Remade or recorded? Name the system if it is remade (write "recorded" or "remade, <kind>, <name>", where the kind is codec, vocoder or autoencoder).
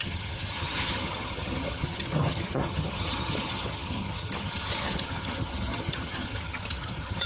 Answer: remade, vocoder, HiFi-GAN